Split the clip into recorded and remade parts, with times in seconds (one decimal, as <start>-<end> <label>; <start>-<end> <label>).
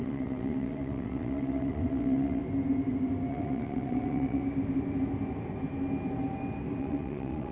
0.0-2.4 remade; 2.4-3.3 recorded; 3.3-4.4 remade; 4.4-6.8 recorded; 6.8-7.5 remade